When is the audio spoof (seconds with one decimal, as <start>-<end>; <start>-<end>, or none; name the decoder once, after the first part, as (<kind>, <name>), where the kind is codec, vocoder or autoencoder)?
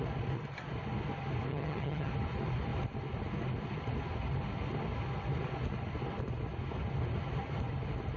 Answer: 1.5-2.1 (vocoder, HiFi-GAN)